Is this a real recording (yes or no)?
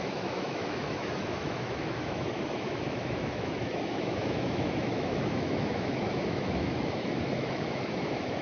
no